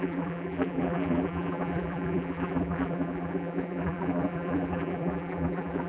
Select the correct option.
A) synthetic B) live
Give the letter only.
A